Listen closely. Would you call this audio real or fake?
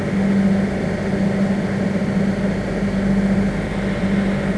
real